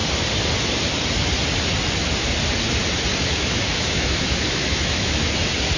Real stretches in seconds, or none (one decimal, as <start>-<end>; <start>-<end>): 0.0-3.1; 5.3-5.8